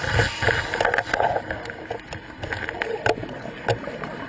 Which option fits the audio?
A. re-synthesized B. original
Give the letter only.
B